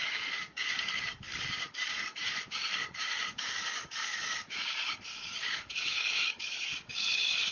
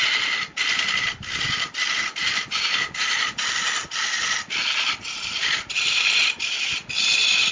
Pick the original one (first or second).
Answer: second